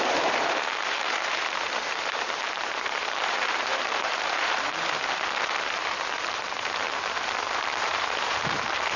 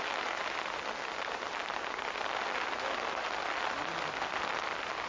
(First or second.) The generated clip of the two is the first